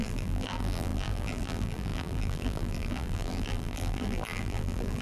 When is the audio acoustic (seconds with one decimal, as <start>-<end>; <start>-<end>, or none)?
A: none